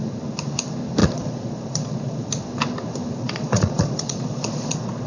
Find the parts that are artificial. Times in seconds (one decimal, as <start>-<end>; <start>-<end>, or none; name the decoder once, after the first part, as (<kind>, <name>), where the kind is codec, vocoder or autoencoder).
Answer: 1.0-2.3 (vocoder, Vocos); 3.2-5.1